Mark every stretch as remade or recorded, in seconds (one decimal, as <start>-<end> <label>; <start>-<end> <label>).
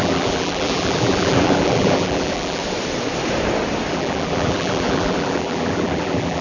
0.0-2.6 remade; 2.6-3.9 recorded; 3.9-6.4 remade